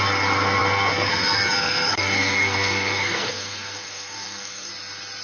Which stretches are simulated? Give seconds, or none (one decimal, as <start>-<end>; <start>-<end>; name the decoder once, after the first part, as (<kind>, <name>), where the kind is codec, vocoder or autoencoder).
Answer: 1.6-4.7 (codec, SNAC)